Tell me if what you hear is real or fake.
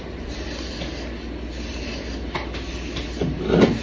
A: real